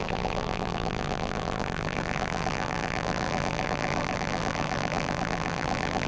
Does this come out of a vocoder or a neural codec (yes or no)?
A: yes